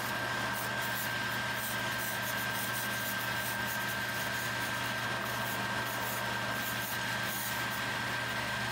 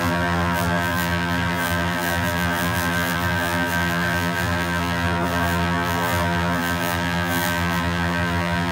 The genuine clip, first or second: first